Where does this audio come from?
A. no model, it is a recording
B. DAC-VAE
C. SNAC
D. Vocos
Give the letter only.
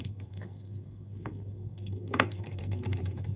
C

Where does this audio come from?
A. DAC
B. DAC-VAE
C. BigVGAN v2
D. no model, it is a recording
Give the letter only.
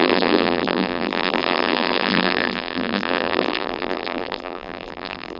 C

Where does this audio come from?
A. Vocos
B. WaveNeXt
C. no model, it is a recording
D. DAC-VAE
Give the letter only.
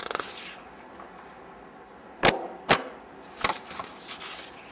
C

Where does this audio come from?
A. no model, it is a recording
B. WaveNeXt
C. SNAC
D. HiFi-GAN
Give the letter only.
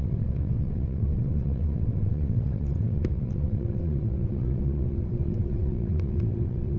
B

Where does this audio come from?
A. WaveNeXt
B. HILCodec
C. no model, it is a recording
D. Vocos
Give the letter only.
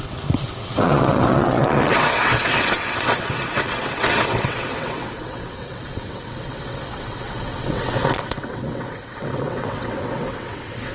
A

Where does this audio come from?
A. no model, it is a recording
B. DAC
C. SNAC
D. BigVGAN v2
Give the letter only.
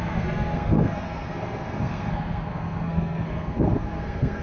C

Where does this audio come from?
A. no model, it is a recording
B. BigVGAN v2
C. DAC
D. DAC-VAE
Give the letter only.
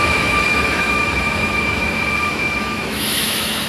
D